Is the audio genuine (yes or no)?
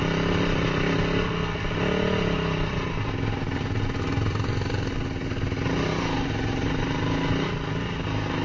yes